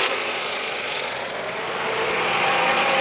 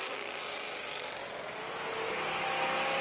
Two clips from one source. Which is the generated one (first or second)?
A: first